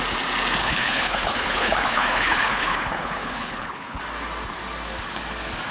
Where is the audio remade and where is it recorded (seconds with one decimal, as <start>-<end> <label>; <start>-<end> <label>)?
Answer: 0.0-0.6 recorded; 0.6-4.0 remade; 4.0-5.7 recorded